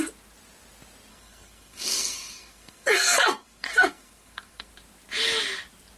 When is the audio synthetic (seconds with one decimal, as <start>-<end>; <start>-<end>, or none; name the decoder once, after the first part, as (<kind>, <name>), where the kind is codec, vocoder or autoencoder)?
1.1-4.7 (codec, SNAC)